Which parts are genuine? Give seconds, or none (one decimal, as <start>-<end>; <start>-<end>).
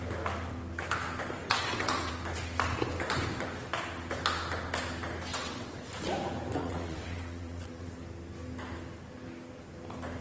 0.0-1.4; 2.1-5.3; 5.9-6.6; 8.0-10.2